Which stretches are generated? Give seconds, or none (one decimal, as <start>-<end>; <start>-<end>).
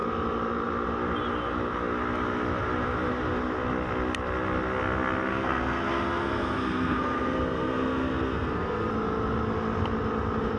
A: 5.3-8.9